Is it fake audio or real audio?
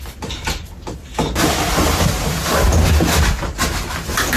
real